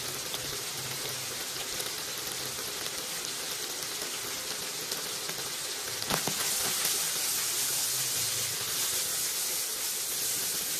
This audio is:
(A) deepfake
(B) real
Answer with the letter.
B